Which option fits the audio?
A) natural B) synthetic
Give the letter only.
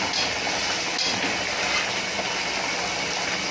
A